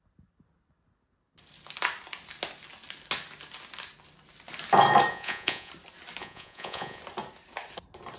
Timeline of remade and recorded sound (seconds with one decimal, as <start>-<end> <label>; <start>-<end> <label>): 0.0-5.1 recorded; 5.1-5.7 remade; 5.7-6.2 recorded; 6.2-7.0 remade; 7.0-8.2 recorded